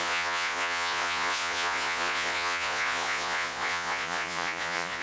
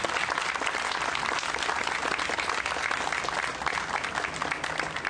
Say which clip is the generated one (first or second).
first